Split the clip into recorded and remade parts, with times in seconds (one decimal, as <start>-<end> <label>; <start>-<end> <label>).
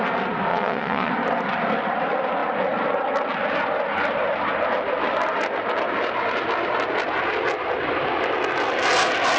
0.0-0.5 recorded; 0.5-1.1 remade; 1.1-9.4 recorded